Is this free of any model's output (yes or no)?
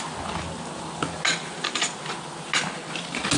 yes